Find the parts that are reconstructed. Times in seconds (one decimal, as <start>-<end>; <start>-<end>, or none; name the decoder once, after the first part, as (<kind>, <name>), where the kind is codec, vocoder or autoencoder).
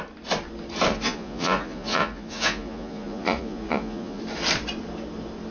0.9-4.2 (vocoder, Vocos)